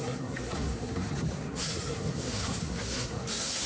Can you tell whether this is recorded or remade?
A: remade